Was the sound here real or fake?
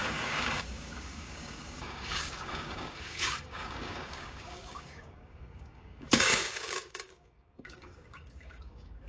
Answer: fake